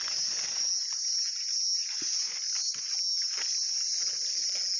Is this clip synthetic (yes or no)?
no